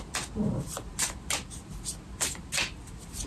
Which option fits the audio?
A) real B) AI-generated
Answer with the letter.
A